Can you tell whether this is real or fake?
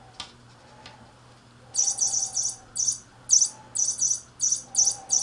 real